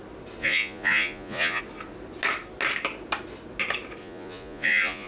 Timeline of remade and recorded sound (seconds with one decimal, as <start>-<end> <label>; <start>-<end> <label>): 0.0-0.4 recorded; 0.4-1.6 remade; 1.6-4.0 recorded; 4.0-5.1 remade